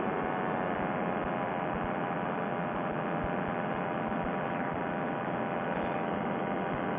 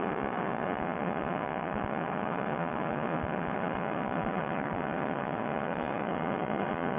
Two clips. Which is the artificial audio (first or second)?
second